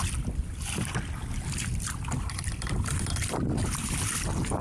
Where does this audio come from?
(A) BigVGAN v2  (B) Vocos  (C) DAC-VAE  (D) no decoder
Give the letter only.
A